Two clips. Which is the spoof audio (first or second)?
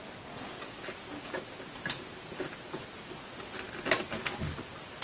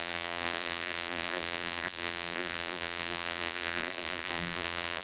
second